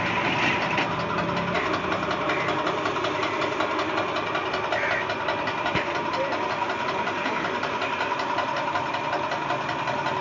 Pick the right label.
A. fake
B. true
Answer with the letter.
B